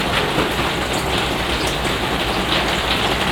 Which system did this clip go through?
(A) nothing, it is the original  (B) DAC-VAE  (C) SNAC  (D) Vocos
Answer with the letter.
A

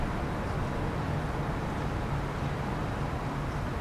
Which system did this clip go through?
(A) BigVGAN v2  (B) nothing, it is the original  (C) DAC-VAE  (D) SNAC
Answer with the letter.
B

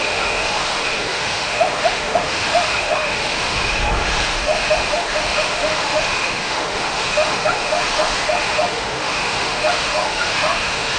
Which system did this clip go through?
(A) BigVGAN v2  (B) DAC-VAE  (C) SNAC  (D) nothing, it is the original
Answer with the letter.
B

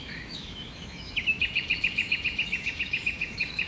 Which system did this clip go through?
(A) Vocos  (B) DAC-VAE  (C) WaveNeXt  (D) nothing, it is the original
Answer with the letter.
B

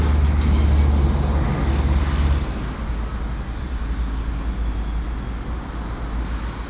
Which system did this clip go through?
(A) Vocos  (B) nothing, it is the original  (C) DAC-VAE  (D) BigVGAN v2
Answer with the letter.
B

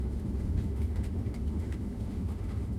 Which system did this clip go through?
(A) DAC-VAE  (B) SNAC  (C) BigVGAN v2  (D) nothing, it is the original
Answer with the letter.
A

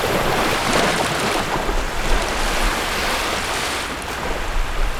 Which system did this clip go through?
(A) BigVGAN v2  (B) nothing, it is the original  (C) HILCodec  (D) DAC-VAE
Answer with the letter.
B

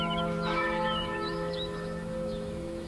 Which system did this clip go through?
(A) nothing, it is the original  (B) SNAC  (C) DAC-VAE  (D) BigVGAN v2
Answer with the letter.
C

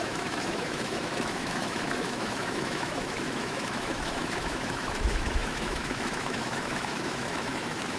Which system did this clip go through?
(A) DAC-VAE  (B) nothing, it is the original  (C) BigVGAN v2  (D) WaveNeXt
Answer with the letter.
A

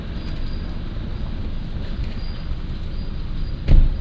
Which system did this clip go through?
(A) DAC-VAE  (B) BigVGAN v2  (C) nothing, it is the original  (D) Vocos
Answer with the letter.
C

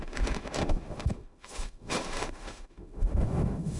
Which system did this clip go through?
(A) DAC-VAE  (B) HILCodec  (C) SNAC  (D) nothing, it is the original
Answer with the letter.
A